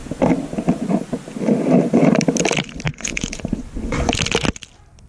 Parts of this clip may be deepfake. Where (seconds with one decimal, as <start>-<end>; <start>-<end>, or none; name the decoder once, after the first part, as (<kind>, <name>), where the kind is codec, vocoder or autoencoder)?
2.9-4.1 (vocoder, Vocos)